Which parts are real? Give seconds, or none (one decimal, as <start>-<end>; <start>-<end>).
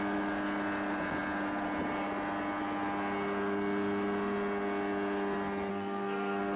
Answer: 0.0-5.7